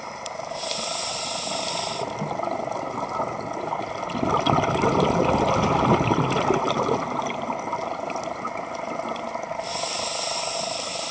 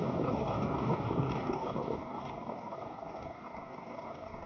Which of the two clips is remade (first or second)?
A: second